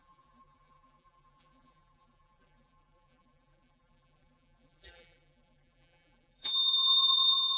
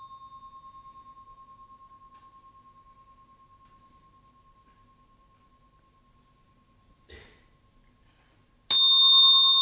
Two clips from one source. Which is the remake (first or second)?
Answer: first